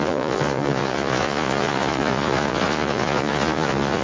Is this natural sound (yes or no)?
no